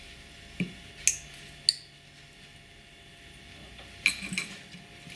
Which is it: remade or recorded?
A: recorded